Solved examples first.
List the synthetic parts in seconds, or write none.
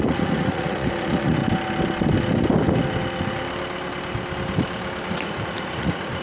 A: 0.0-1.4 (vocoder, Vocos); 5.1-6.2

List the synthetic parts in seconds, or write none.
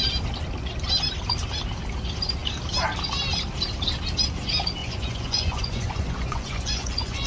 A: 4.8-7.3 (vocoder, Vocos)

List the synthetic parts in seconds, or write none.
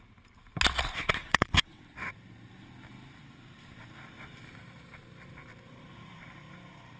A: 1.2-1.8 (vocoder, WaveNeXt)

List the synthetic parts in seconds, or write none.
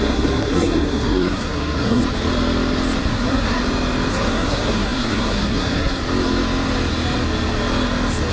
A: 0.0-2.0 (codec, SNAC); 3.0-3.6; 4.1-6.0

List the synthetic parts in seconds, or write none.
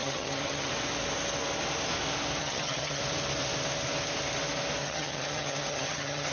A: 0.0-0.7 (vocoder, HiFi-GAN); 2.4-3.0; 4.8-6.3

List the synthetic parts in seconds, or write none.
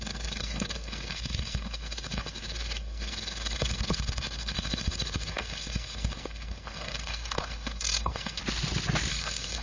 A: 0.0-8.4 (codec, SNAC); 9.1-9.6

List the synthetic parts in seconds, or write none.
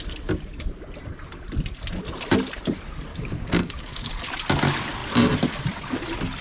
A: 3.1-4.1 (codec, DAC)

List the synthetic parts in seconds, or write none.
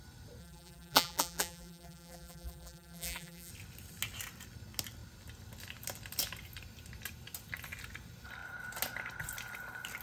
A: 0.4-3.5 (vocoder, BigVGAN v2)